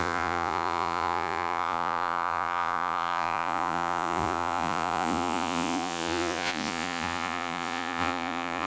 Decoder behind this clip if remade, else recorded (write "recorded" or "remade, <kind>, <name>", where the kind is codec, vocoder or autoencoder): remade, vocoder, Vocos